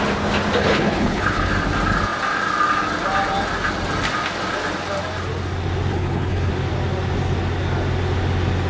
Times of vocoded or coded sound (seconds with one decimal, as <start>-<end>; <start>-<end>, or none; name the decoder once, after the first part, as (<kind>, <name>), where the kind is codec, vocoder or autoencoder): 0.6-1.5 (codec, HILCodec); 5.9-6.5